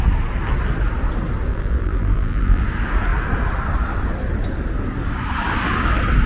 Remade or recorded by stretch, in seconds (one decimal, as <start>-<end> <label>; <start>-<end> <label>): 0.0-1.5 recorded; 1.5-2.6 remade; 2.6-6.3 recorded

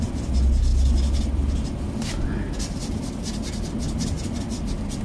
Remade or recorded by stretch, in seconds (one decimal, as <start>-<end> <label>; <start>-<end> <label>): 0.0-0.7 recorded; 0.7-3.7 remade; 3.7-5.0 recorded

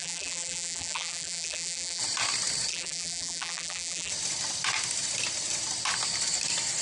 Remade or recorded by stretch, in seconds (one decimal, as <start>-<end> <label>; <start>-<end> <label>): 0.0-2.0 remade; 2.0-2.7 recorded; 2.7-4.1 remade; 4.1-6.8 recorded

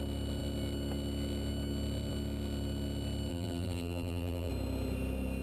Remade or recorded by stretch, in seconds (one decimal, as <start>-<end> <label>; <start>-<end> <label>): 0.0-3.3 recorded; 3.3-4.5 remade; 4.5-5.4 recorded

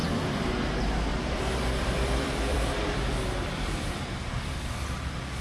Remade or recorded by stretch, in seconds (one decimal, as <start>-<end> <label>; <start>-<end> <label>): 0.0-0.5 remade; 0.5-1.1 recorded; 1.1-4.3 remade; 4.3-5.4 recorded

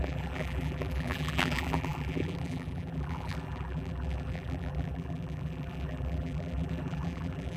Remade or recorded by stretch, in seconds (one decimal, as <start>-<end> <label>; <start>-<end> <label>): 0.0-7.6 remade

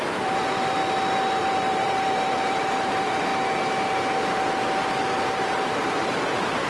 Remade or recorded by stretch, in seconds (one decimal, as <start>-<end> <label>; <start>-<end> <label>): 0.0-0.8 remade; 0.8-1.4 recorded; 1.4-3.3 remade; 3.3-5.2 recorded; 5.2-6.7 remade

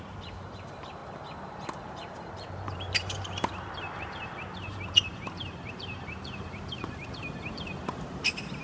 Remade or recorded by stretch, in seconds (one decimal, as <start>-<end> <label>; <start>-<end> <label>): 0.0-1.0 remade; 1.0-1.8 recorded; 1.8-8.6 remade